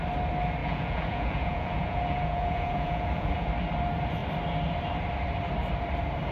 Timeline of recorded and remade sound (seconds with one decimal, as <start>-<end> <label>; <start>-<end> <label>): 0.0-0.6 recorded; 0.6-3.5 remade; 3.5-6.3 recorded